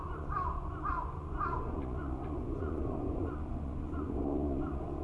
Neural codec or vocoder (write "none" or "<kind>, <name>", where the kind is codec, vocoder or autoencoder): vocoder, Vocos